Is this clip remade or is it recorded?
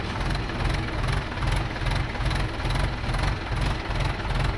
recorded